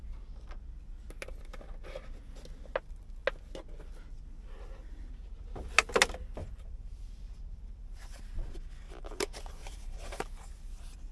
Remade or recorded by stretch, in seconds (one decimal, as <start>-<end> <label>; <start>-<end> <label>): 0.0-6.4 recorded; 6.4-7.0 remade; 7.0-9.6 recorded; 9.6-10.2 remade; 10.2-11.1 recorded